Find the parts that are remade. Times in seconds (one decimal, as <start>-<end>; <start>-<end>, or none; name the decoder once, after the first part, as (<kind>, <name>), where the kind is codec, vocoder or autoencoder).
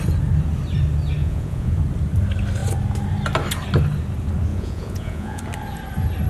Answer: 1.2-1.8 (vocoder, Vocos); 4.5-5.4